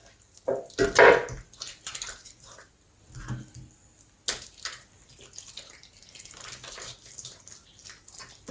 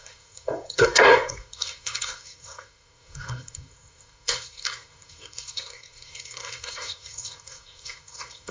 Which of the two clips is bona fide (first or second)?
first